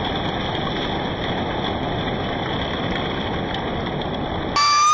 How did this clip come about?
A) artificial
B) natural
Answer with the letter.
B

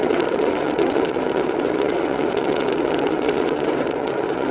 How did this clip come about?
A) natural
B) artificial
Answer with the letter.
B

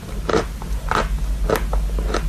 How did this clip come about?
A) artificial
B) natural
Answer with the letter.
B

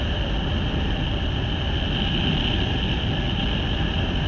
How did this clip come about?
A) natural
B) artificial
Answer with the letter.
A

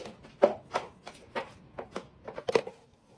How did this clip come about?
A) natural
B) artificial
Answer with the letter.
A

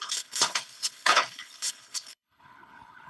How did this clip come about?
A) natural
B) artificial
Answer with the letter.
B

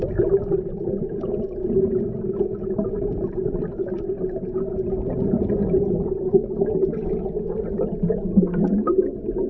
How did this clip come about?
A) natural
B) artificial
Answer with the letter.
A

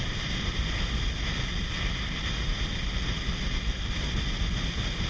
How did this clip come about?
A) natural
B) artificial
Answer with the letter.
A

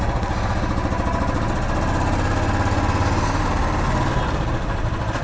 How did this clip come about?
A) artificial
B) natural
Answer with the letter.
B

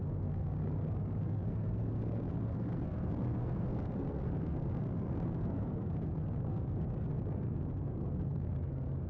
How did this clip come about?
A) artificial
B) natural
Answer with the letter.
A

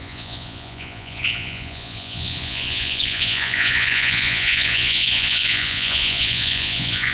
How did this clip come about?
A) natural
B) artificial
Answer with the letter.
B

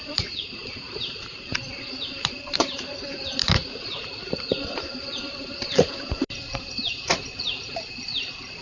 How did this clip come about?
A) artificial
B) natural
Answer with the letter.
A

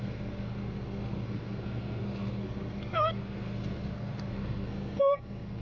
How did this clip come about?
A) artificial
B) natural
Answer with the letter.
A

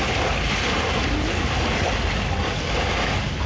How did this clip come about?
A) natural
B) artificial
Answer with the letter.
A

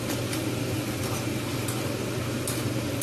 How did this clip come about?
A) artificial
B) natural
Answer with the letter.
B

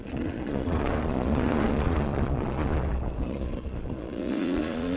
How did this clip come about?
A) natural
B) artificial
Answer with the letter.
B